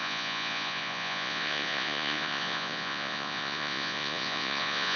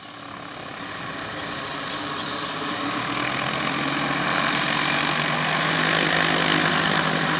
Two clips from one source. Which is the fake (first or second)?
first